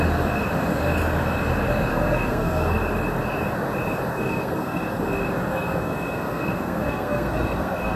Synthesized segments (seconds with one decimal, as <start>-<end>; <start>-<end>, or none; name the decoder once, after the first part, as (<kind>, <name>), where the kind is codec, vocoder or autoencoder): 1.9-2.8 (codec, SNAC); 4.1-5.0; 5.5-8.0